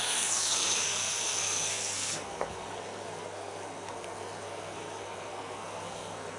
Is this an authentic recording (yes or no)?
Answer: no